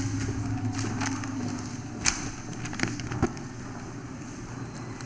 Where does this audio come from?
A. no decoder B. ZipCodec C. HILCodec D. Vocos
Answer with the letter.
A